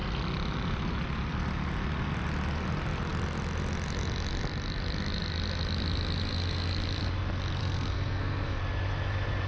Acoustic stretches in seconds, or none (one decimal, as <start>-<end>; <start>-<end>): 0.0-7.6; 8.6-9.5